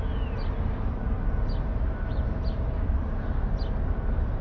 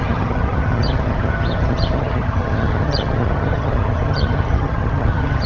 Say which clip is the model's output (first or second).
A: second